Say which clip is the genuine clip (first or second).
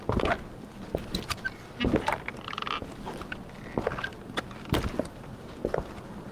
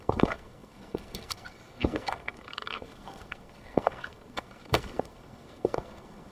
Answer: first